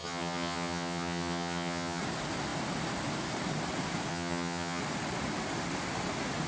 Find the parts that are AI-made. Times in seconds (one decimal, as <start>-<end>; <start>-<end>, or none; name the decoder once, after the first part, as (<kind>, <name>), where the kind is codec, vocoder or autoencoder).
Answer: 0.0-2.0 (vocoder, HiFi-GAN); 4.1-4.8